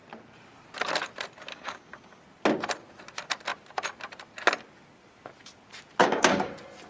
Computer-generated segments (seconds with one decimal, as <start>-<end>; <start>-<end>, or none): 1.5-2.2; 6.0-6.5